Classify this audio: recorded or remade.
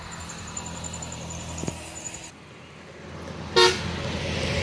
recorded